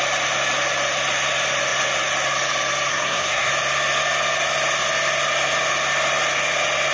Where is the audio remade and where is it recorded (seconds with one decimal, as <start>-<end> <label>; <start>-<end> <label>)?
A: 0.0-2.9 recorded; 2.9-3.5 remade; 3.5-6.9 recorded